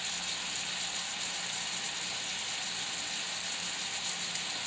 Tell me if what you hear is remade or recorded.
recorded